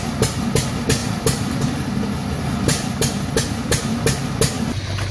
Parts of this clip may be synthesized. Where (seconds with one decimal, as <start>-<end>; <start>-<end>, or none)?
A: 1.0-3.0